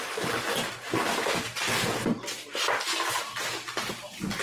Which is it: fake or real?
real